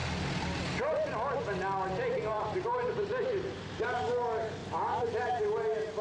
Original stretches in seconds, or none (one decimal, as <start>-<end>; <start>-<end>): 0.0-2.3; 4.1-4.6; 5.4-6.0